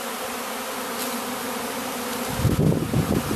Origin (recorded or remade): recorded